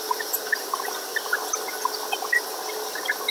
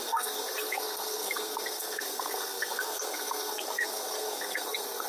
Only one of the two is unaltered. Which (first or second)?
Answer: first